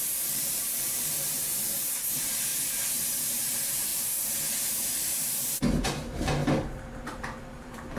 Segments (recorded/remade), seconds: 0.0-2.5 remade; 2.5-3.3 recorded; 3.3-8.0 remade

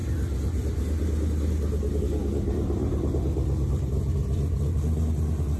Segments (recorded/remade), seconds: 0.0-5.6 recorded

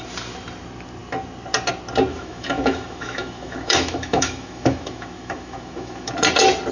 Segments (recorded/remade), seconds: 0.0-2.1 recorded; 2.1-6.1 remade; 6.1-6.7 recorded

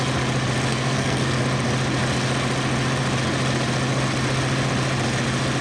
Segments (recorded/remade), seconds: 0.0-0.7 recorded; 0.7-1.4 remade; 1.4-5.6 recorded

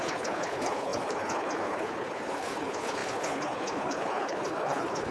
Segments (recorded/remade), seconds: 0.0-5.1 remade

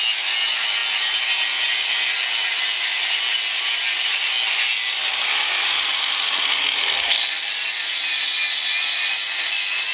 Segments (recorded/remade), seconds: 0.0-9.9 recorded

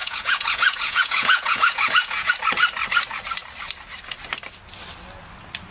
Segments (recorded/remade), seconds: 0.0-2.3 remade; 2.3-5.7 recorded

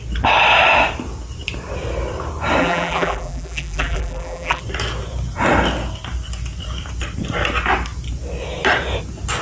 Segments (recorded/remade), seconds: 0.0-2.6 recorded; 2.6-4.6 remade; 4.6-9.4 recorded